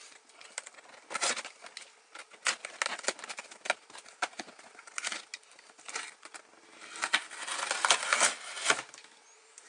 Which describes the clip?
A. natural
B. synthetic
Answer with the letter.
A